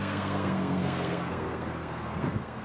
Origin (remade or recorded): remade